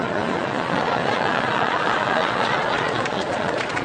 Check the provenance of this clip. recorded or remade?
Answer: remade